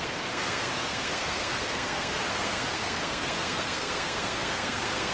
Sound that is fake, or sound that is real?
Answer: fake